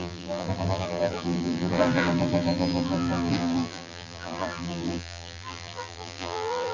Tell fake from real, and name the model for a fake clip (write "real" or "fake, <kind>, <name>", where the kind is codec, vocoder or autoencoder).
fake, vocoder, BigVGAN v2